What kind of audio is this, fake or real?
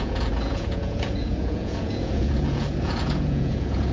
fake